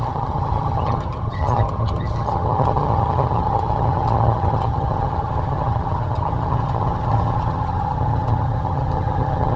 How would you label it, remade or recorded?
remade